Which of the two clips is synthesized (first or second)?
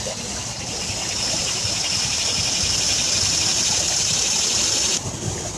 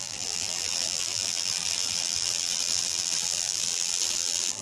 second